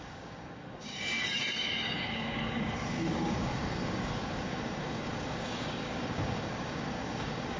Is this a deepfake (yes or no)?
yes